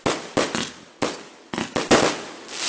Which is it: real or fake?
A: real